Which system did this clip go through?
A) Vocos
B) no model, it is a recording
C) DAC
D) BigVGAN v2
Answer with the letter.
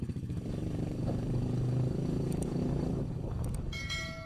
C